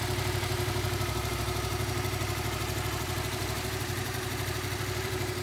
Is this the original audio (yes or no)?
no